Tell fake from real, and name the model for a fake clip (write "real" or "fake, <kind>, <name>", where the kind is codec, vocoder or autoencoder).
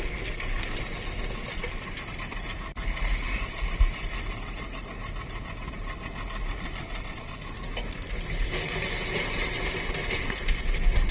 real